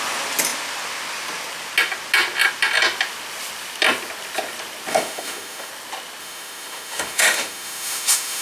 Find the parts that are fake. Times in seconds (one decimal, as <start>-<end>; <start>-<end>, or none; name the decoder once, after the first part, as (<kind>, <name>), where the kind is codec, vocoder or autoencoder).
4.9-5.7 (autoencoder, DAC-VAE); 6.2-8.4